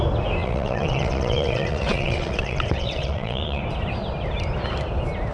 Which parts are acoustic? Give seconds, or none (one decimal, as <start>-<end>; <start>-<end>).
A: 0.0-0.4; 3.6-5.3